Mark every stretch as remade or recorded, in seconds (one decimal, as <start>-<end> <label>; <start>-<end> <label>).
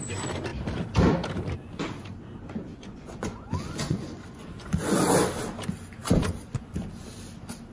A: 0.0-2.7 recorded; 2.7-5.0 remade; 5.0-7.7 recorded